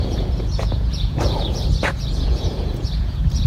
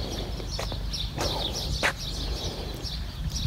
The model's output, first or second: first